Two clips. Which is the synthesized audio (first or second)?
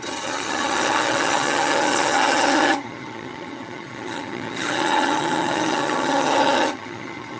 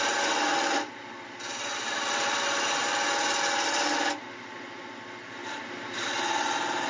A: first